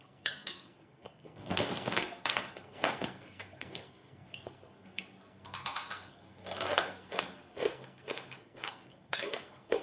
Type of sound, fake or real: fake